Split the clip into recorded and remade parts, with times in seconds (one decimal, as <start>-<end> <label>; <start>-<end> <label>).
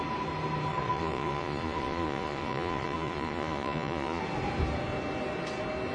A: 0.0-0.7 recorded; 0.7-4.2 remade; 4.2-5.9 recorded